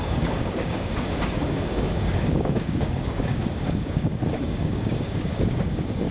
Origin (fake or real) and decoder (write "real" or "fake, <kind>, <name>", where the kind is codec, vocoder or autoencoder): fake, codec, DAC